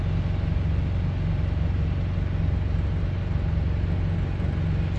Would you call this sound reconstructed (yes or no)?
no